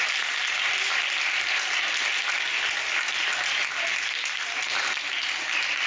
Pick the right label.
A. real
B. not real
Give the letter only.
A